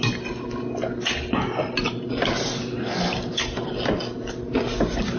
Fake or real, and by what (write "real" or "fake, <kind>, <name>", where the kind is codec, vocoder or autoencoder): real